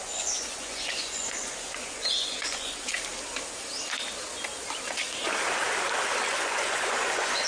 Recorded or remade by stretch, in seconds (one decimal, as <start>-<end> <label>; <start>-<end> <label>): 0.0-2.9 remade; 2.9-6.3 recorded; 6.3-7.5 remade